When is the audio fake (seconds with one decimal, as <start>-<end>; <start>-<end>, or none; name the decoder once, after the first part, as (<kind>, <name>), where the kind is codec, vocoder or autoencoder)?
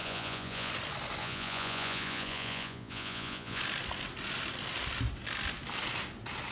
0.0-0.7 (vocoder, Vocos); 1.2-3.6